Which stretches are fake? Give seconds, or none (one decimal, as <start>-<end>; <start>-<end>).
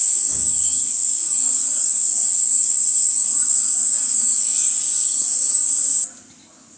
0.0-5.7